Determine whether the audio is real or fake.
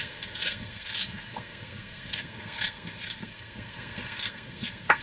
fake